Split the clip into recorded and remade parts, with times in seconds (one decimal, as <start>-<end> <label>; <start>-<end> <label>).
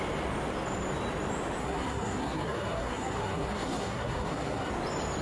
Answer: 0.0-1.6 recorded; 1.6-4.7 remade; 4.7-5.2 recorded